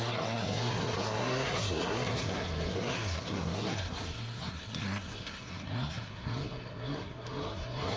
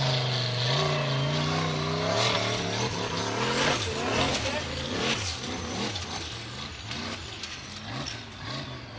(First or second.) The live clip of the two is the second